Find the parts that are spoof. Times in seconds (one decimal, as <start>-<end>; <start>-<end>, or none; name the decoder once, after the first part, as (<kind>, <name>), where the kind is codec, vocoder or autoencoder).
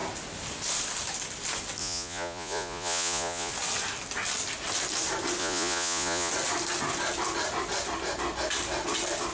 1.8-3.5 (vocoder, Vocos); 5.4-6.3